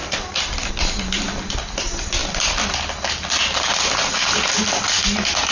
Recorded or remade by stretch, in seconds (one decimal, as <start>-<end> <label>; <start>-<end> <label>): 0.0-5.5 recorded